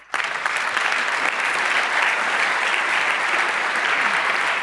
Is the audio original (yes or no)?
yes